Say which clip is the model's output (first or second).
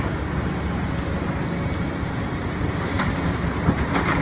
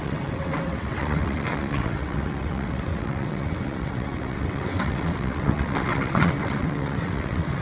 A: second